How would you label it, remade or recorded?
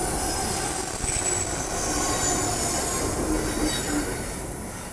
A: recorded